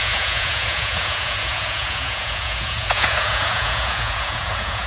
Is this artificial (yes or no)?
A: yes